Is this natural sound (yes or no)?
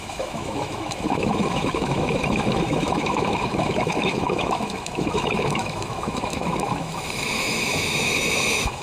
no